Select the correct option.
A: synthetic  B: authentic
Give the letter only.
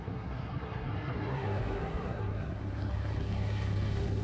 A